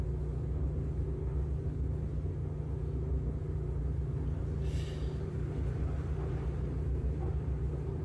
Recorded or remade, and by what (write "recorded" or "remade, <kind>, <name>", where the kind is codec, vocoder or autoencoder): recorded